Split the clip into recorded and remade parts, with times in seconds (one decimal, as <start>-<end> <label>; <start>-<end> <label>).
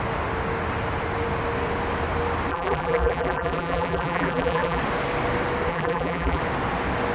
0.0-2.5 recorded; 2.5-4.8 remade; 4.8-5.7 recorded; 5.7-6.4 remade; 6.4-7.1 recorded